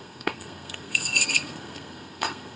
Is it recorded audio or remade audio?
remade